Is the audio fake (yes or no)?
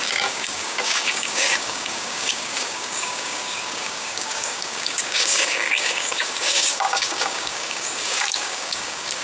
yes